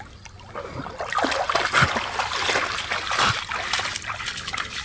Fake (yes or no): no